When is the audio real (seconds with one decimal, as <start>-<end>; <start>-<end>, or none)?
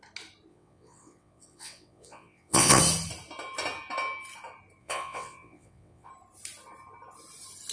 0.0-0.5; 2.8-4.8; 6.1-7.7